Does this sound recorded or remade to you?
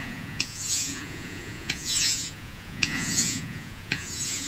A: remade